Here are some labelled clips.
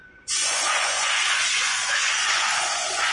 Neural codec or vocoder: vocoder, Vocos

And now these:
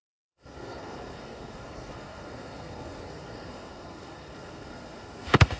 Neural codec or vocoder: codec, SNAC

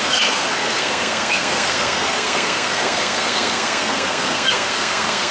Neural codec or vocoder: codec, SNAC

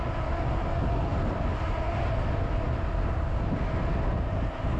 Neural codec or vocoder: none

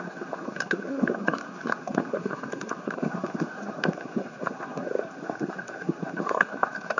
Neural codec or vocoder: codec, SNAC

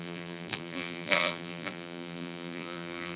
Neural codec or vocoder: vocoder, BigVGAN v2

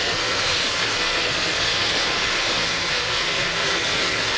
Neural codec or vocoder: codec, SNAC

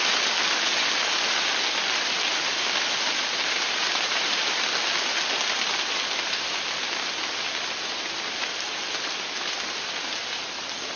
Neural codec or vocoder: none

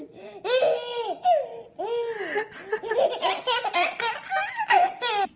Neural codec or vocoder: none